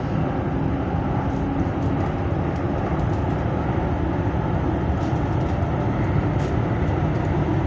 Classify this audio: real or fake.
real